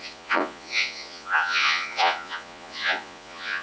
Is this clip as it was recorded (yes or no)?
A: no